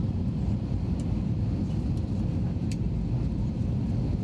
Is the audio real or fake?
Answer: real